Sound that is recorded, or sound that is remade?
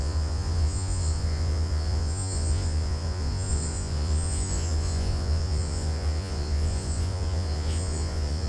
remade